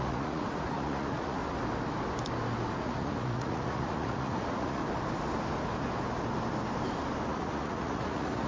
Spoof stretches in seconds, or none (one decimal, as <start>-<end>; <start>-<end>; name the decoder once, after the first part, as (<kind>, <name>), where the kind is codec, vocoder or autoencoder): 0.0-1.4 (vocoder, Vocos); 2.8-4.8; 7.3-8.5

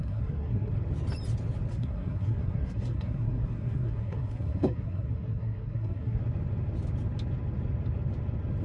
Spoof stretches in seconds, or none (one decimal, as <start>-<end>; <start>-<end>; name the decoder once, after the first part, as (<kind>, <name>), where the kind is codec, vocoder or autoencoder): 0.0-0.7 (codec, SNAC); 1.7-6.2

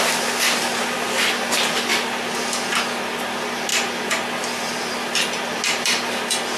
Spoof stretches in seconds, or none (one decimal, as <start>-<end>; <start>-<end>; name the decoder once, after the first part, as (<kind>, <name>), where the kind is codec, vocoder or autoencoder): none

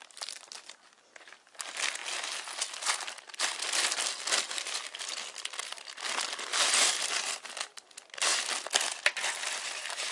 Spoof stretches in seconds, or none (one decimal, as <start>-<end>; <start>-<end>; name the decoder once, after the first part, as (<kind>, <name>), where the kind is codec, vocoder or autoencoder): none

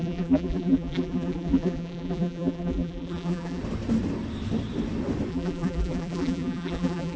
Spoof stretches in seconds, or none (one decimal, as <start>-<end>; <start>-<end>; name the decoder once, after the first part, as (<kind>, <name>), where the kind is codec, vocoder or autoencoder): 0.0-3.6 (vocoder, BigVGAN v2); 5.3-7.2

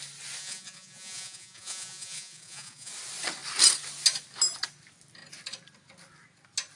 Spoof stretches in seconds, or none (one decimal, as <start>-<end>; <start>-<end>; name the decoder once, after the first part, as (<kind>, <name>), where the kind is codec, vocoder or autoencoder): 0.4-2.9 (vocoder, Vocos)

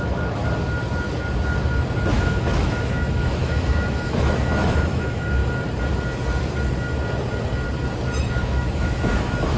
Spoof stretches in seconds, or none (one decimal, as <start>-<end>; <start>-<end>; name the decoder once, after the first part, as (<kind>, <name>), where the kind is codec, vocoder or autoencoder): 0.0-0.4 (autoencoder, DAC-VAE); 2.1-5.4; 8.3-9.6

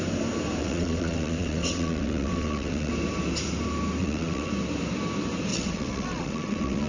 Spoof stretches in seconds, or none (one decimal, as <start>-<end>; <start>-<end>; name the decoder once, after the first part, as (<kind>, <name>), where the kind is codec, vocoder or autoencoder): 0.6-2.9 (vocoder, WaveNeXt); 4.0-4.5; 5.5-6.9